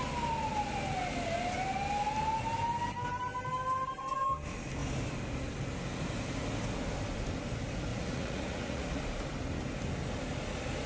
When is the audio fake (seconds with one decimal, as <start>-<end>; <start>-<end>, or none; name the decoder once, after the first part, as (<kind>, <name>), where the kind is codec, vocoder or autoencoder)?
7.9-9.0 (vocoder, Vocos)